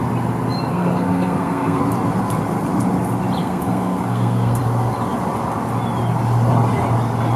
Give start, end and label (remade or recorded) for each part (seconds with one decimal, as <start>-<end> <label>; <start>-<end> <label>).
0.0-0.7 recorded; 0.7-1.8 remade; 1.8-3.4 recorded; 3.4-4.6 remade; 4.6-7.4 recorded